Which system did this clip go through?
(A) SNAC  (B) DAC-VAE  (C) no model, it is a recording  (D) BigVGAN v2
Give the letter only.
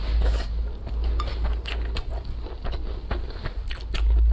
C